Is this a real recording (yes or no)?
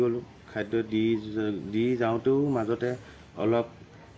yes